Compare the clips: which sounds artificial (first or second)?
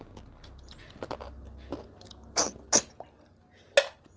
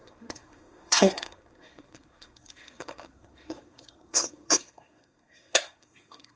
second